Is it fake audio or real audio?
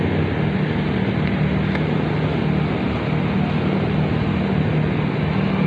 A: real